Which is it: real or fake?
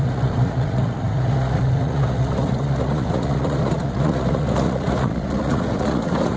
fake